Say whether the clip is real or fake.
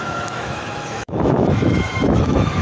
fake